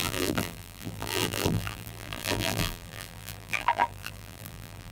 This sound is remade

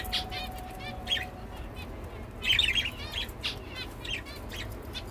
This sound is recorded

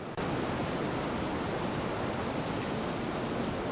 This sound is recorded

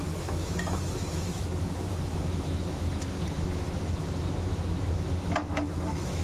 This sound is remade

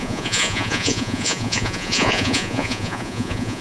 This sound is remade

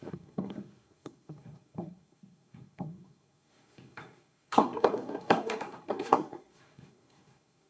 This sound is remade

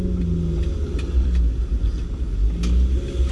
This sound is recorded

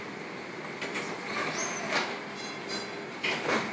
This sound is recorded